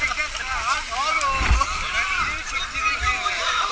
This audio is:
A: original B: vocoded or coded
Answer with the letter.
A